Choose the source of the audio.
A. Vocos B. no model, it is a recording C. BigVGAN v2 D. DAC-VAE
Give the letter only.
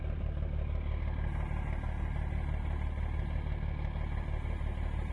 B